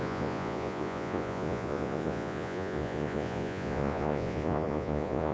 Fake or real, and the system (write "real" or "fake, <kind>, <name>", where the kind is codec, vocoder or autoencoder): fake, vocoder, Vocos